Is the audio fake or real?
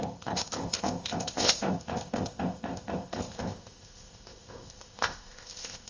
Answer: fake